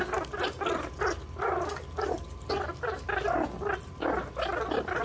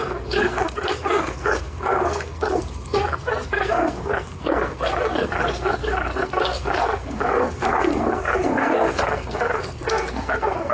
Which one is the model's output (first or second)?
second